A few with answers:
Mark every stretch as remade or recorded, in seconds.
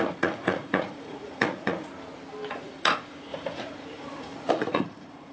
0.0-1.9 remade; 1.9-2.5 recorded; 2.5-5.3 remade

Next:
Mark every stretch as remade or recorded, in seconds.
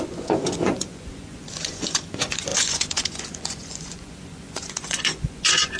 0.0-5.8 remade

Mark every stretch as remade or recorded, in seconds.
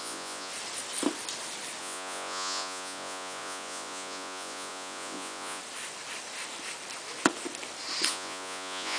0.0-0.5 remade; 0.5-1.8 recorded; 1.8-5.6 remade; 5.6-8.1 recorded; 8.1-9.0 remade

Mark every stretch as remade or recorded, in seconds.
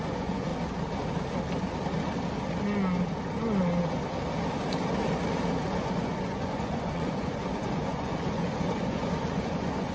0.0-0.5 remade; 0.5-5.6 recorded; 5.6-9.9 remade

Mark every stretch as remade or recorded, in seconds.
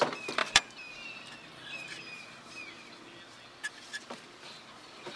0.0-5.2 recorded